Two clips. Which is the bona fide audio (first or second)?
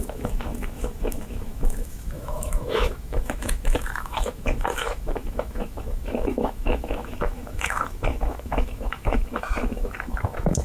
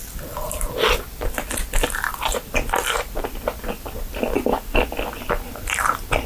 second